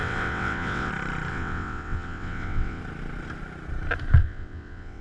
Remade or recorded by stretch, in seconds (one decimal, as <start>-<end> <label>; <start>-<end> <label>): 0.0-0.9 remade; 0.9-1.3 recorded; 1.3-2.8 remade; 2.8-4.2 recorded; 4.2-5.0 remade